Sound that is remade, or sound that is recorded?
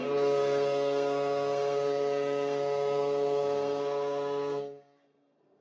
remade